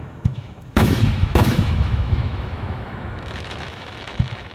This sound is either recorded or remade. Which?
remade